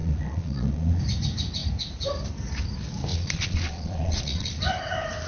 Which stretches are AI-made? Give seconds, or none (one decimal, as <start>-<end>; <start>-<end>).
0.0-1.0; 3.1-4.5